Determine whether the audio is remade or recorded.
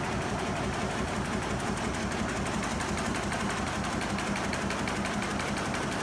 recorded